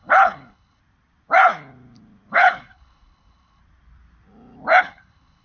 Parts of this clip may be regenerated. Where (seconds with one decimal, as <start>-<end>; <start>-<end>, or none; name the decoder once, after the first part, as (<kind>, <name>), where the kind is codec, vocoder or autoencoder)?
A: 0.0-0.8 (codec, HILCodec); 2.3-3.6; 4.8-5.4